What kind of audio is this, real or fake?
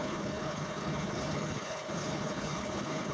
fake